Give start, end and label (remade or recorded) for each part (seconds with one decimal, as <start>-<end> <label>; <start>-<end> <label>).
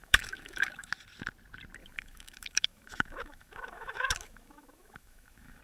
0.0-0.9 remade; 0.9-1.8 recorded; 1.8-5.6 remade